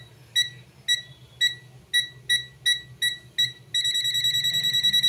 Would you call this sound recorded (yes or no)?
yes